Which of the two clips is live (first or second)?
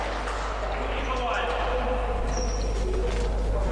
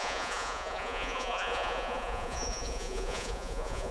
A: first